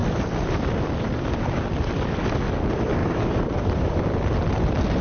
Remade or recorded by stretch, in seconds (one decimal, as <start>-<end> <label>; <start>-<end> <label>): 0.0-3.0 recorded; 3.0-4.0 remade; 4.0-5.0 recorded